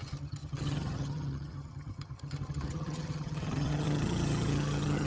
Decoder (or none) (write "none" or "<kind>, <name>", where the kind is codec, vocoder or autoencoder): vocoder, HiFi-GAN